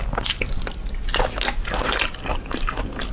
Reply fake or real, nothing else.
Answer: real